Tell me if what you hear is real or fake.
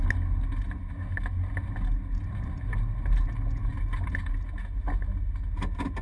real